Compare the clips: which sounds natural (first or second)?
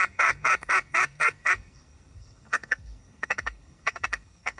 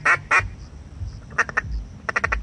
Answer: second